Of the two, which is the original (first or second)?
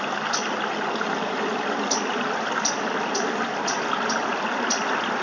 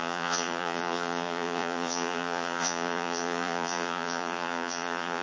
first